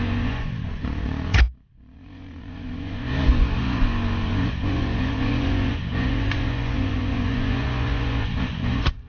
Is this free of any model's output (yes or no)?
no